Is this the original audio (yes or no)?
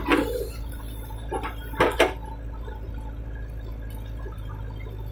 yes